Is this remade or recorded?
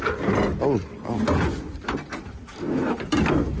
recorded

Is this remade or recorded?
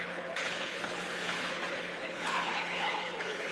remade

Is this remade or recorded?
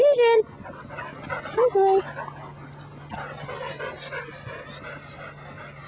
recorded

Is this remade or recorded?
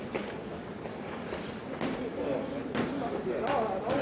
recorded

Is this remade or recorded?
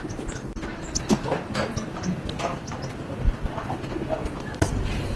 recorded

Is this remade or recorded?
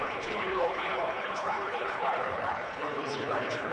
remade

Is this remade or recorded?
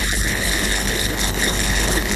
remade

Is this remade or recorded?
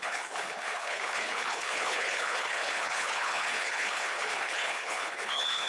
remade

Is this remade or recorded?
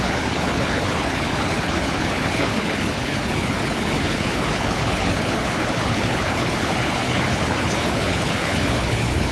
remade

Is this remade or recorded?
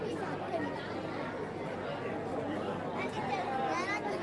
recorded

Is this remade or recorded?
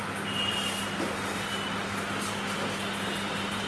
recorded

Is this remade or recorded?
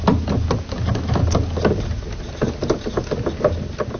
recorded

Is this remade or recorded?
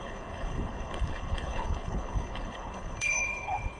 remade